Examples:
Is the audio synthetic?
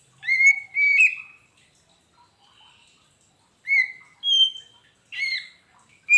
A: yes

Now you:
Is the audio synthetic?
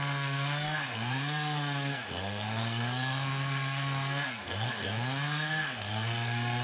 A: yes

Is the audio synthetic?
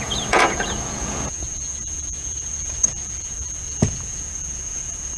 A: yes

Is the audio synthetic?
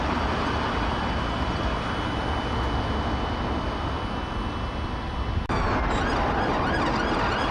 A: no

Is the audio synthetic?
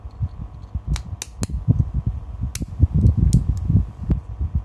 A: no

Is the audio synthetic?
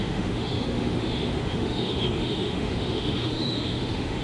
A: yes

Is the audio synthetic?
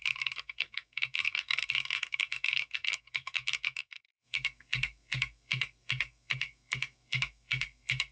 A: yes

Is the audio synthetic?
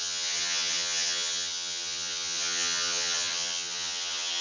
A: yes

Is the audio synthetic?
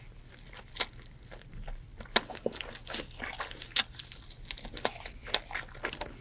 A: no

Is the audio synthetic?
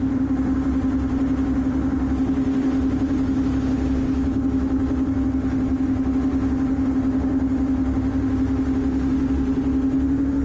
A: no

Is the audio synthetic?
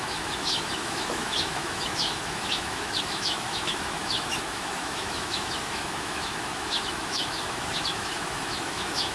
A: yes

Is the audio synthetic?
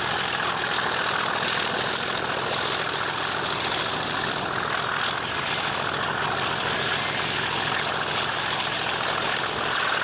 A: no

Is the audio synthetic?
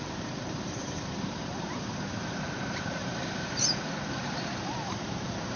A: yes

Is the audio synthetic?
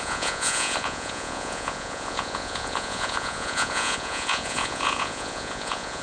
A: yes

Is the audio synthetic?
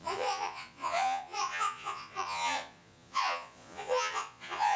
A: yes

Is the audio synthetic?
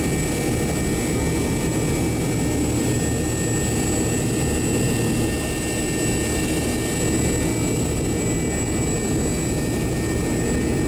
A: no